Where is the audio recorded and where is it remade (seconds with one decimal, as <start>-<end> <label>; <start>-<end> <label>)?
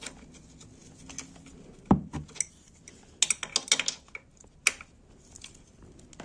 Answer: 0.0-6.2 recorded